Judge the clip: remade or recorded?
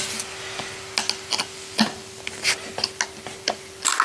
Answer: recorded